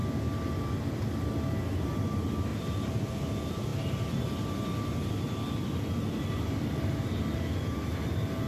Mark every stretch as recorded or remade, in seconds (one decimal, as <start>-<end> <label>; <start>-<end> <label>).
0.0-8.5 recorded